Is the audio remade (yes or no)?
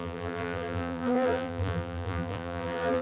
yes